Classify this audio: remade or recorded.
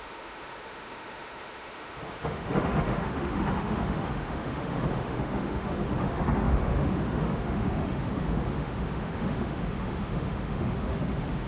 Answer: remade